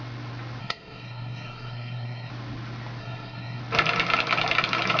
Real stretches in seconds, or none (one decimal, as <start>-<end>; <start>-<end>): 0.0-0.6; 2.3-3.0; 3.6-5.0